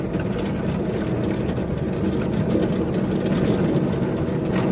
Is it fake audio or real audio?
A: real